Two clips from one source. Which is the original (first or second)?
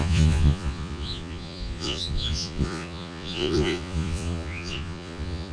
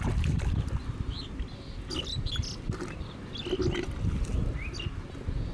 second